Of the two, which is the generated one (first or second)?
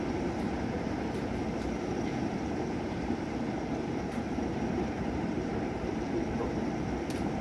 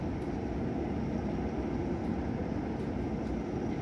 first